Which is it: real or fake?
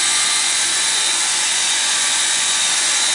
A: fake